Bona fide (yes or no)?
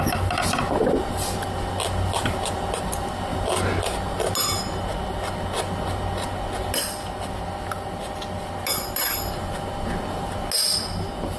yes